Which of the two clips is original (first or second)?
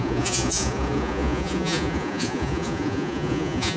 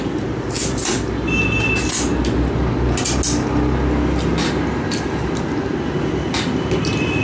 second